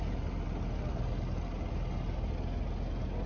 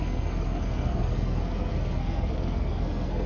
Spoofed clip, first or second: second